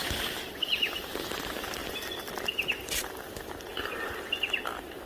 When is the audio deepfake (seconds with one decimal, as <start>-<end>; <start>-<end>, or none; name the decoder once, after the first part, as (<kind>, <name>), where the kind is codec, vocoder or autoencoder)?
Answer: 1.8-4.3 (vocoder, BigVGAN v2)